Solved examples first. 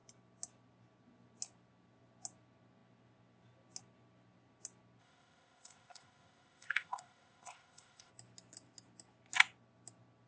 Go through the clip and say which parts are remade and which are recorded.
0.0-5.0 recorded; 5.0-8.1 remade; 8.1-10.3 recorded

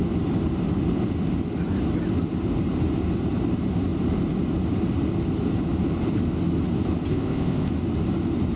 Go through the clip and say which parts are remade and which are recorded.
0.0-7.1 recorded; 7.1-7.7 remade; 7.7-8.6 recorded

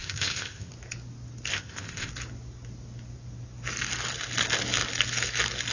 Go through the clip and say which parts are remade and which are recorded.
0.0-0.7 remade; 0.7-1.5 recorded; 1.5-2.1 remade; 2.1-5.7 recorded

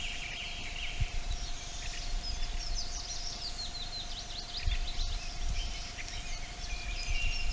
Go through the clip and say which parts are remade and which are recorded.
0.0-7.5 recorded